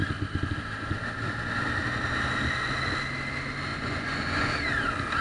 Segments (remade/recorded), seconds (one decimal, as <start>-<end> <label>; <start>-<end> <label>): 0.0-3.7 recorded; 3.7-4.5 remade; 4.5-5.2 recorded